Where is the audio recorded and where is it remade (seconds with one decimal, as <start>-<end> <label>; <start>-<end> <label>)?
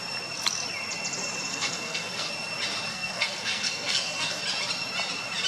0.0-1.5 recorded; 1.5-2.3 remade; 2.3-2.9 recorded; 2.9-4.4 remade; 4.4-5.5 recorded